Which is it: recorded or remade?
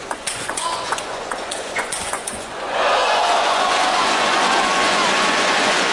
remade